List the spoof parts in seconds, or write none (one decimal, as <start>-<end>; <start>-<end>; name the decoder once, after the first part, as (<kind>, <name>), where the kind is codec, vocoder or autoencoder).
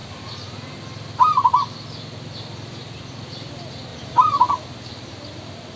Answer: 3.9-4.5 (vocoder, BigVGAN v2)